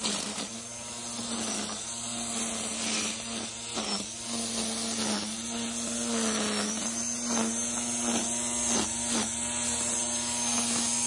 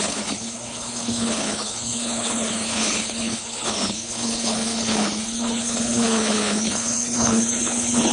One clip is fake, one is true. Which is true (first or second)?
first